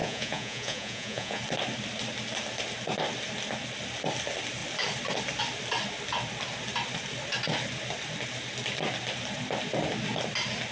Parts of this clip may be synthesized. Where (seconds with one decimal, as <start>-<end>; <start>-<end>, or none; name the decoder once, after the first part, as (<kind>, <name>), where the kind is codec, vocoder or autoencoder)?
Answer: 0.0-1.4 (vocoder, Vocos)